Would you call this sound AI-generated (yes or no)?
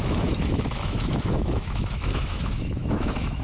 yes